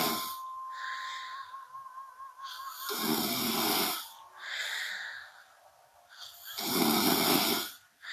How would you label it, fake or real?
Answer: fake